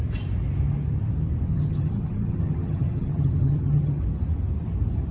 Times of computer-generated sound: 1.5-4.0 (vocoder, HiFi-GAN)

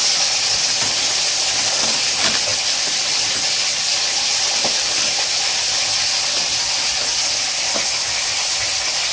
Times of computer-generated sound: 2.5-3.3 (vocoder, BigVGAN v2); 4.3-5.8